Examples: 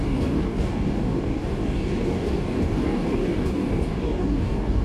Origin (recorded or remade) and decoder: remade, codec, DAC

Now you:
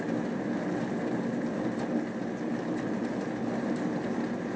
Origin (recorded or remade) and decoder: recorded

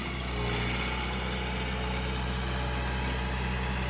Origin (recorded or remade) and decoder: recorded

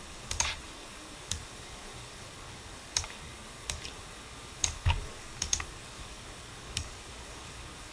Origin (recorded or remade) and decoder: remade, codec, DAC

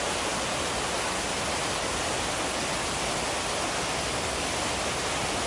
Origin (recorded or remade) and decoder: recorded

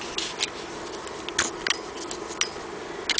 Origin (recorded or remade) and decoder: recorded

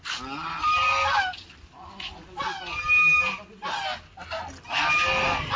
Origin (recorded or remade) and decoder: recorded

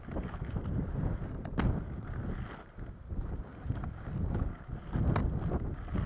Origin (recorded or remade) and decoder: recorded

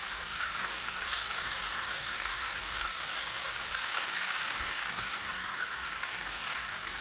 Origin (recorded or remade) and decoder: remade, codec, DAC